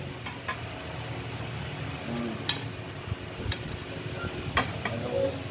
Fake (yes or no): no